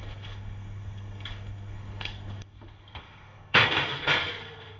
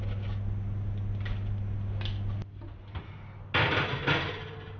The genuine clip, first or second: second